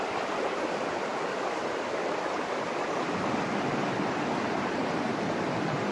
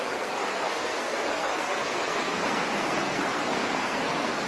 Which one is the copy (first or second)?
second